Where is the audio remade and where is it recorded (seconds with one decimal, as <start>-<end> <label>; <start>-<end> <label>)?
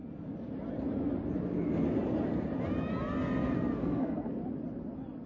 0.0-3.8 recorded; 3.8-4.4 remade; 4.4-5.3 recorded